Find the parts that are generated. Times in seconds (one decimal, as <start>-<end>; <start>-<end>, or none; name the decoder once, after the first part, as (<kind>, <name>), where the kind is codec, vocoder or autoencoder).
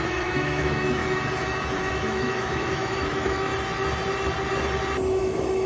0.0-1.0 (autoencoder, DAC-VAE); 1.8-3.5; 5.2-5.7